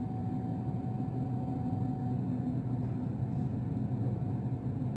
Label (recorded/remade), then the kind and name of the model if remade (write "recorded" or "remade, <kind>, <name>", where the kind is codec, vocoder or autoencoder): recorded